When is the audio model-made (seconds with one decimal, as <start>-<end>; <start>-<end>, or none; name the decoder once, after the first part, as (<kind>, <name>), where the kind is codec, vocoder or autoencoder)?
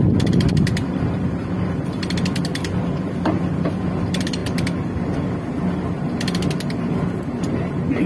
none